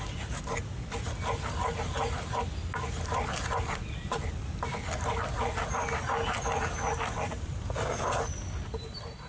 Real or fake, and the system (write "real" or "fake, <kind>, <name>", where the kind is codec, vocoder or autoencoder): real